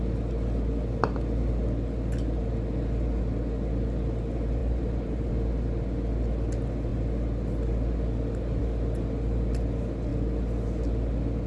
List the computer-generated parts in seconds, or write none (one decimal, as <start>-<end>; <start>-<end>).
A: 4.6-5.3